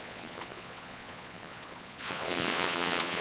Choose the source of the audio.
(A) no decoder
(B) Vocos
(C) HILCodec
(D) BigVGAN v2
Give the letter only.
B